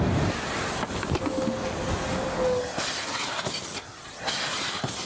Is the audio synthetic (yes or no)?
no